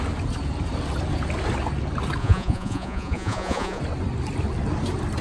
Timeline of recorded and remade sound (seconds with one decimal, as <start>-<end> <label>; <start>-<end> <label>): 0.0-2.2 recorded; 2.2-3.8 remade; 3.8-5.2 recorded